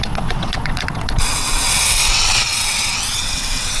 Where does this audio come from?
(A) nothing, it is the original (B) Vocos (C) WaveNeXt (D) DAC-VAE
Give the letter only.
C